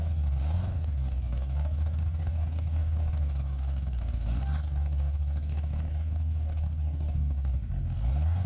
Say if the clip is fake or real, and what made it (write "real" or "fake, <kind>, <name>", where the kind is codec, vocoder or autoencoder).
fake, codec, DAC